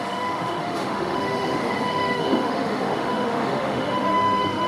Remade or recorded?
remade